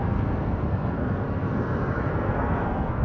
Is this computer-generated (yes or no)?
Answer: yes